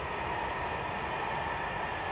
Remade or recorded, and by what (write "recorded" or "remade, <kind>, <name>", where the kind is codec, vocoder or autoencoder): recorded